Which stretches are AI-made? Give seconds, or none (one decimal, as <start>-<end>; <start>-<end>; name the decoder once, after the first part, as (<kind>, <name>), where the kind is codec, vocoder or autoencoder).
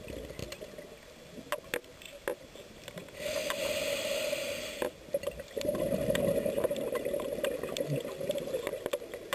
none